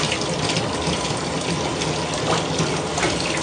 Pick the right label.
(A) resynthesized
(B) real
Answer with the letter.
B